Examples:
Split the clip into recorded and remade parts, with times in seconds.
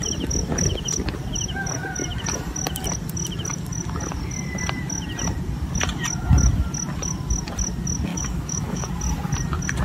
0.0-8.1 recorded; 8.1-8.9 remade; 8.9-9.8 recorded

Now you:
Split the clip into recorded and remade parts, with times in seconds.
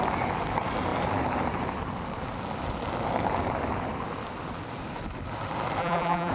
0.0-5.8 recorded; 5.8-6.3 remade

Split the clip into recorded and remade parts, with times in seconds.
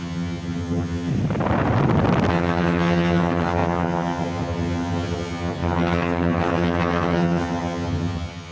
0.0-1.1 remade; 1.1-2.3 recorded; 2.3-8.5 remade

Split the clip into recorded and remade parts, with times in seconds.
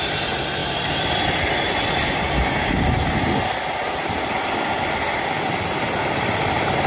0.0-6.9 recorded